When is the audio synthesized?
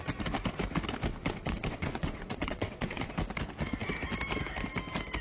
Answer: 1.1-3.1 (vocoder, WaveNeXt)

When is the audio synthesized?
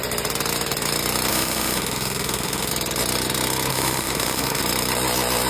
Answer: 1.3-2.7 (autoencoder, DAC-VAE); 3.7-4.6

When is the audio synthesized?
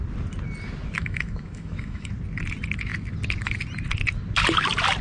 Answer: 1.0-2.1 (autoencoder, DAC-VAE)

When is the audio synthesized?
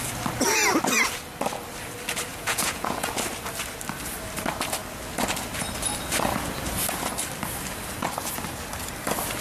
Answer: 2.3-3.1 (vocoder, Vocos)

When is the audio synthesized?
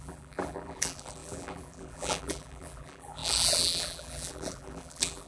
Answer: 0.0-5.3 (vocoder, BigVGAN v2)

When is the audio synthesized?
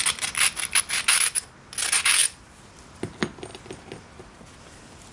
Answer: none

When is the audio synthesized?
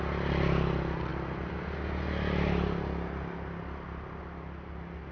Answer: none